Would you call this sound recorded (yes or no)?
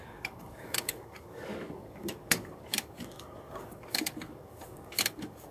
no